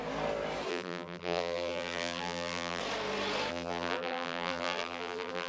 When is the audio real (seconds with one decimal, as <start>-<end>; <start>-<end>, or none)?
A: 0.0-0.7; 2.8-3.5